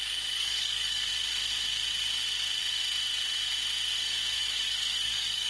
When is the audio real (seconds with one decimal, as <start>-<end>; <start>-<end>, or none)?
1.1-4.4